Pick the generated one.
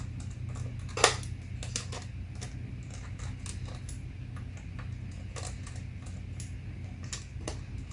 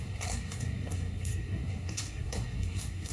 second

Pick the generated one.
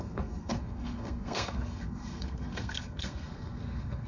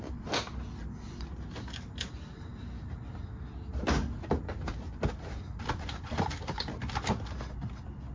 first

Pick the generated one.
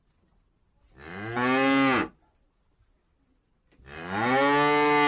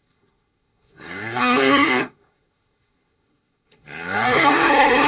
second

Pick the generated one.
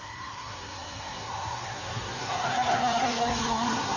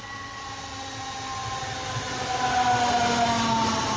first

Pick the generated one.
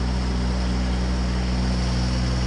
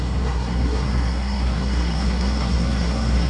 second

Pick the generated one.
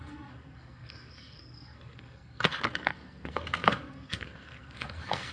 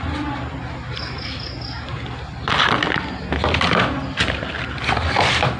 first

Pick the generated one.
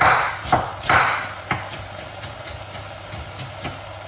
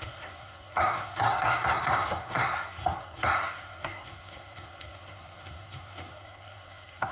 second